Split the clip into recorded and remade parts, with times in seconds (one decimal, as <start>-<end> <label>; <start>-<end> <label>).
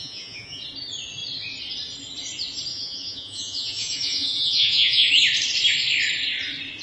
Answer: 0.0-0.6 remade; 0.6-2.7 recorded; 2.7-5.1 remade; 5.1-6.8 recorded